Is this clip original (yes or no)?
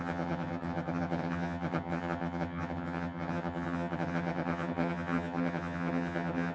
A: no